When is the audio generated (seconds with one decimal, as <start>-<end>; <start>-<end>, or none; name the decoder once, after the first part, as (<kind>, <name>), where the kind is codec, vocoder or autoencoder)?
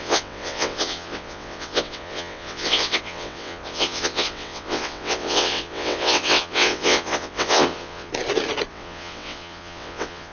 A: 0.0-8.1 (vocoder, WaveNeXt); 8.7-10.3